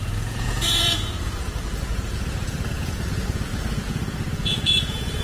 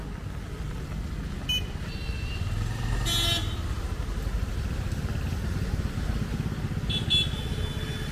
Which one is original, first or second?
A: second